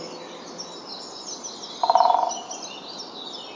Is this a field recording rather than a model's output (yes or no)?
yes